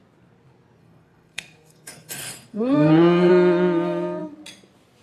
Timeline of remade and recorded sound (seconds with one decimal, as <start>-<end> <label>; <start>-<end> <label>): 0.0-0.8 recorded; 0.8-3.3 remade; 3.3-5.0 recorded